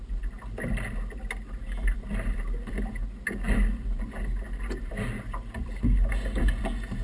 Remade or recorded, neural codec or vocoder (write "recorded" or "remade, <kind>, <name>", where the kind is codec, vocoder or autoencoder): recorded